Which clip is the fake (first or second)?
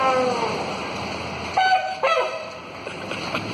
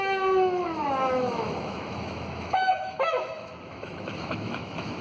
second